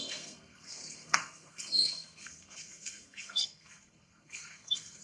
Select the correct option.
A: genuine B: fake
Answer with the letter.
B